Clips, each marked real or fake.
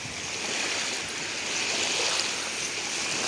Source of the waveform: real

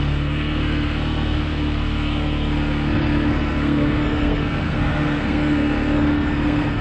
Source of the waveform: fake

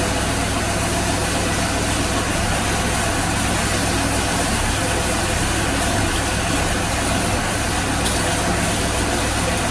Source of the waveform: real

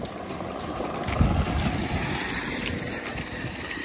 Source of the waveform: real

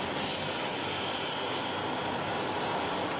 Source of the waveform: real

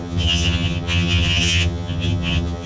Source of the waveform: fake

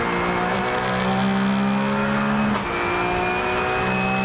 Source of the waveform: real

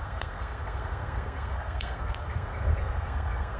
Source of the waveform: fake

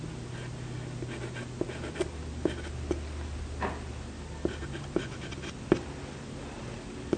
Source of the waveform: real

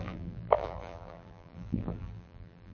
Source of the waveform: fake